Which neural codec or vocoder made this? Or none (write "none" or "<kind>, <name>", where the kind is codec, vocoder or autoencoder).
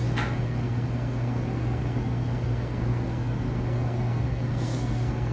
codec, SNAC